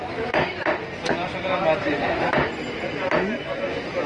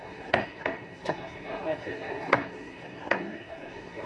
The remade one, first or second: second